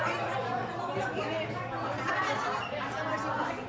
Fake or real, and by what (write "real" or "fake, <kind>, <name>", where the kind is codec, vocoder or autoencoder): real